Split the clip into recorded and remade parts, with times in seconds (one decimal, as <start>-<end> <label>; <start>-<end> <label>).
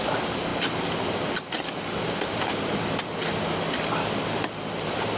0.0-5.2 recorded